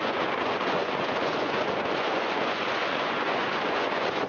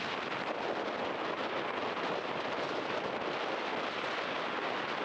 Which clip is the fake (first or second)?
first